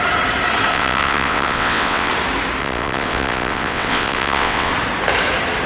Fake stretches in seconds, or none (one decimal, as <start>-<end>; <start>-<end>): 0.7-2.1; 2.6-4.7